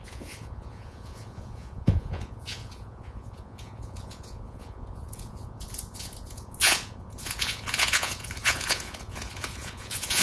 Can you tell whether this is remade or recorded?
remade